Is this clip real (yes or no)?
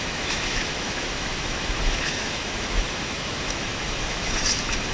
no